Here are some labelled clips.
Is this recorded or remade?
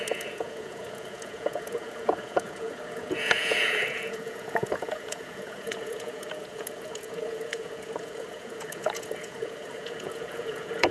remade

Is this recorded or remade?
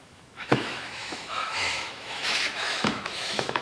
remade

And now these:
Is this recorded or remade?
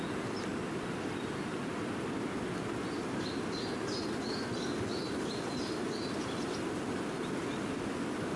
recorded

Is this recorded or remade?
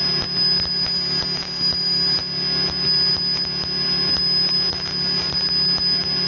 recorded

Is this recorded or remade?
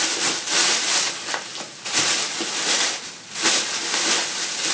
recorded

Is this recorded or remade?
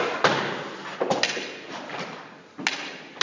recorded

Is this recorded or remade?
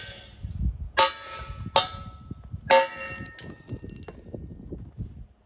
recorded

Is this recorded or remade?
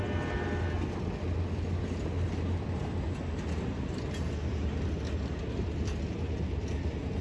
recorded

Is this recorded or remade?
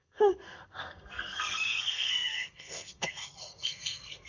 remade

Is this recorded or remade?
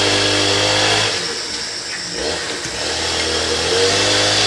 recorded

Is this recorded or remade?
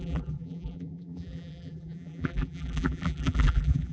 remade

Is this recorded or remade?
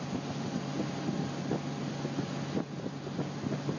recorded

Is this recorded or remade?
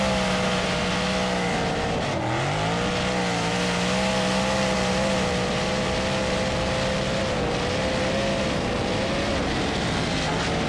recorded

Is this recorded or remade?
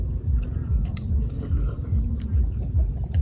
remade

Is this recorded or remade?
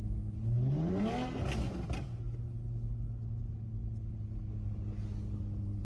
recorded